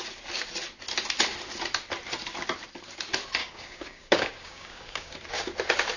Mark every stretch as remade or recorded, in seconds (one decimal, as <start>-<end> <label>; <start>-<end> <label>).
0.0-3.4 recorded; 3.4-5.1 remade; 5.1-6.0 recorded